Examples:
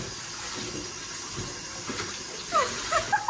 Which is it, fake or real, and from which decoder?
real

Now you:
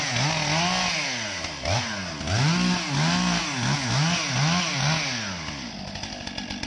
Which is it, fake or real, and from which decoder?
real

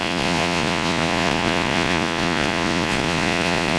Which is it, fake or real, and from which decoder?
fake, vocoder, Vocos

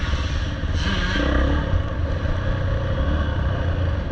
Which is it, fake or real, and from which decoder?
real